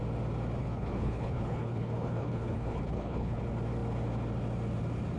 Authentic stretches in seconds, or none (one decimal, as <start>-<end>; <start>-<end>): 0.0-0.6; 3.4-5.2